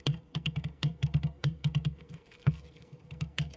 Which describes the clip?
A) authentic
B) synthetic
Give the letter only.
B